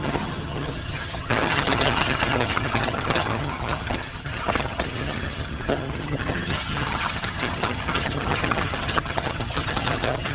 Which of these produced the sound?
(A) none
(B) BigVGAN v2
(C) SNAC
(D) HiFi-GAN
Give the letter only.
D